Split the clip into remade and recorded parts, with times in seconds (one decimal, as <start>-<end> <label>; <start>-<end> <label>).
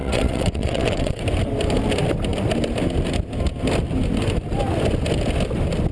0.0-1.2 remade; 1.2-5.9 recorded